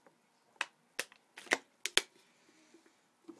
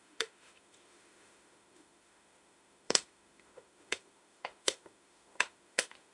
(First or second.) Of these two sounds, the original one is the first